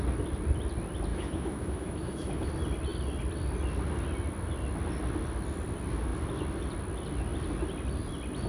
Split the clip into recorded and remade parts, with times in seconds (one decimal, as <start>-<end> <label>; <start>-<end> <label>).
0.0-1.1 recorded; 1.1-2.5 remade; 2.5-8.5 recorded

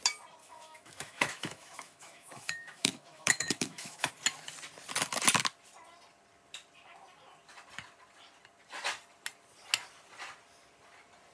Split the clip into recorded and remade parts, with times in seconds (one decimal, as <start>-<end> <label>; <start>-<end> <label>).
0.0-0.4 recorded; 0.4-4.1 remade; 4.1-11.3 recorded

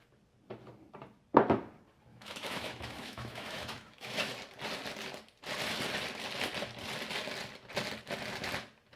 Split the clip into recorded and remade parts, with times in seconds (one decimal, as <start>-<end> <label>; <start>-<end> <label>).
0.0-2.1 recorded; 2.1-4.3 remade; 4.3-9.0 recorded

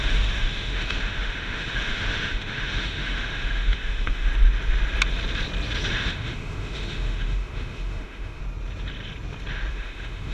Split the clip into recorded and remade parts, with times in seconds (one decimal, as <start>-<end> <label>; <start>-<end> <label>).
0.0-4.3 remade; 4.3-6.0 recorded; 6.0-8.4 remade; 8.4-9.7 recorded; 9.7-10.3 remade

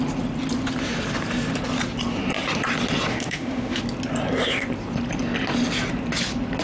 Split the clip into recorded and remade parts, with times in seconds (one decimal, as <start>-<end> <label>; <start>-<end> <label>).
0.0-3.1 recorded; 3.1-3.8 remade; 3.8-6.6 recorded